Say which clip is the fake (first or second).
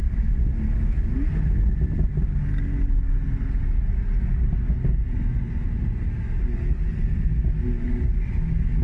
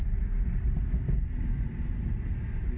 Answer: second